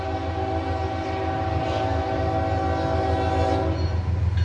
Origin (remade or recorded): recorded